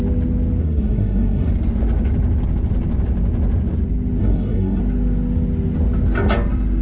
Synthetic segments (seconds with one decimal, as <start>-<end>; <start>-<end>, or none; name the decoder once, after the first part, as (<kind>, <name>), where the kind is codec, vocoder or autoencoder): 0.6-1.5 (codec, SNAC); 4.2-4.8